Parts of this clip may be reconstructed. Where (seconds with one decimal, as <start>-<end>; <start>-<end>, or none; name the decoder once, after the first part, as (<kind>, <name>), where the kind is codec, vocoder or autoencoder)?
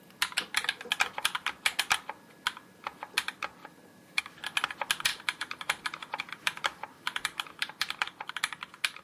3.6-4.2 (vocoder, BigVGAN v2); 5.1-8.3